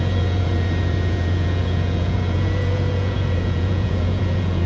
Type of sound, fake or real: fake